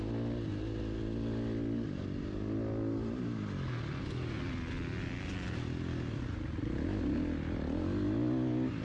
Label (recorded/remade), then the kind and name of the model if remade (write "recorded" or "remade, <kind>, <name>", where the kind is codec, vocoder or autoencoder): recorded